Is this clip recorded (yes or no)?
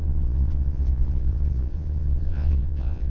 no